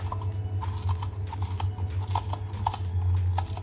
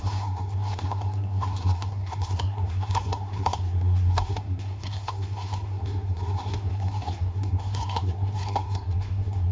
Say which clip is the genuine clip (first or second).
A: first